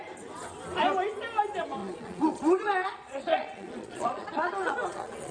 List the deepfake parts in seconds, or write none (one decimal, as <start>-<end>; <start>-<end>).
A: 1.8-5.3

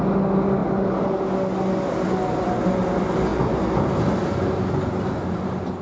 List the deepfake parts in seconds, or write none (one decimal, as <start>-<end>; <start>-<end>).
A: none

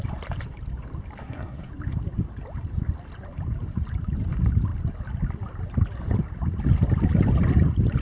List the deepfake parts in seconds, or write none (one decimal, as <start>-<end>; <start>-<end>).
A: 1.2-1.7

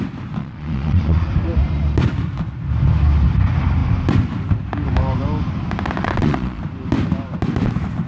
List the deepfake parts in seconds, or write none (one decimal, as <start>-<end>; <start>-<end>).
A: 0.4-1.3; 6.0-6.6

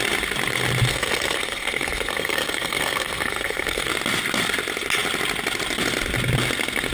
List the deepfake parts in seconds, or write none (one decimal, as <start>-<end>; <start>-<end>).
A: 0.9-3.9

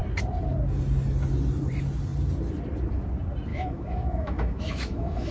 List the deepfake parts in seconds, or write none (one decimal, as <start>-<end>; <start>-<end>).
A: 3.5-5.3

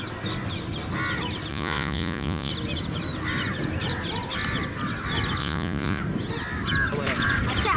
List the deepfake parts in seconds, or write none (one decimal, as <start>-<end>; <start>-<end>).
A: 1.5-2.5; 5.4-6.0

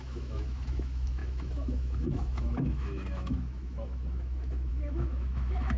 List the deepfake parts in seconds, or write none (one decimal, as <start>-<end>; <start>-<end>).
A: 0.0-5.8